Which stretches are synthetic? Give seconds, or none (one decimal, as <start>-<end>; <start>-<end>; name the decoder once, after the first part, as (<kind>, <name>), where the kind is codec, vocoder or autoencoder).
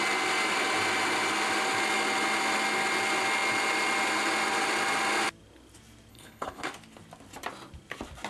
6.1-6.7 (codec, HILCodec)